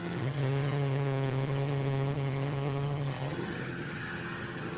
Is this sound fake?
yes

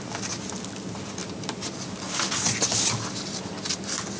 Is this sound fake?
no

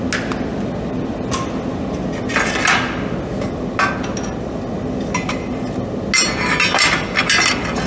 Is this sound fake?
no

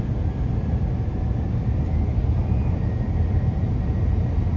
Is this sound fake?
no